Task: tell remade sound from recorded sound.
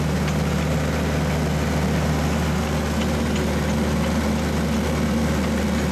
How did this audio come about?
recorded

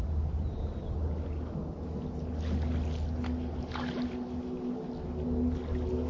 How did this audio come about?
recorded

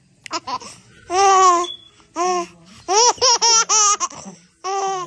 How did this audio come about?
recorded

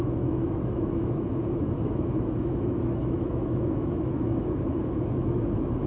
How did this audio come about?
remade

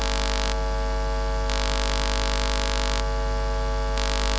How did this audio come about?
recorded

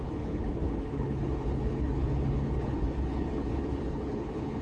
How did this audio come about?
remade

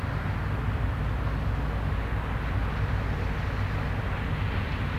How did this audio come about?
recorded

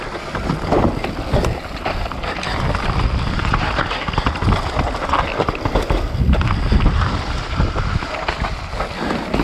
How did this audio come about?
recorded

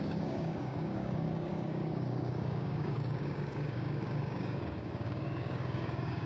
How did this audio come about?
remade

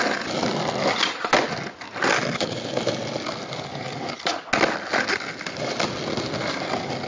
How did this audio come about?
recorded